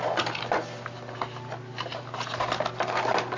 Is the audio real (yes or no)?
yes